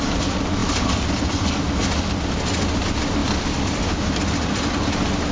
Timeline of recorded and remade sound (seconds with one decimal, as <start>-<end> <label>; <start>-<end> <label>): 0.0-0.6 recorded; 0.6-1.5 remade; 1.5-3.2 recorded; 3.2-4.1 remade; 4.1-5.3 recorded